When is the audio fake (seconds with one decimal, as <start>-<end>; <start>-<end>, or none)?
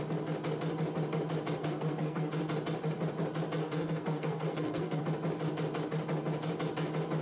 1.6-2.3; 3.6-5.0